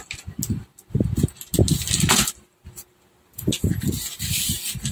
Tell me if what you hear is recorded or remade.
recorded